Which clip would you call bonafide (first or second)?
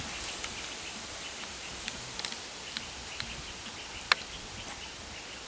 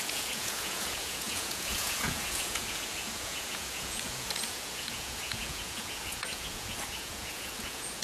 first